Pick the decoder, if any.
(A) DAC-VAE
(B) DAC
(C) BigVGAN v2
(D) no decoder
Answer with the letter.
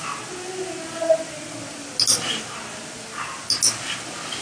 D